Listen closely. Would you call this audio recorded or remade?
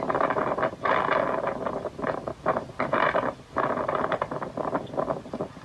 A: recorded